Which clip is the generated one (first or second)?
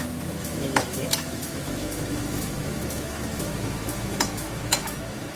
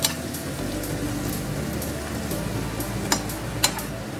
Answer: first